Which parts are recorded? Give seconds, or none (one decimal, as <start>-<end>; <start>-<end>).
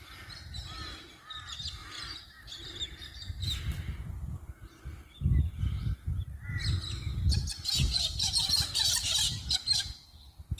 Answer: 0.0-10.6